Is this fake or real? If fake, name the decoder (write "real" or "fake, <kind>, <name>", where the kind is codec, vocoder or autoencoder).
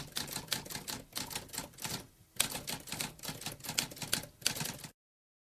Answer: real